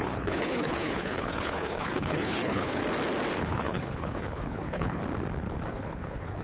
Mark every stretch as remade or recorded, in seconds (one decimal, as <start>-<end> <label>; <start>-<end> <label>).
0.0-2.8 remade; 2.8-3.4 recorded; 3.4-5.0 remade; 5.0-5.7 recorded; 5.7-6.4 remade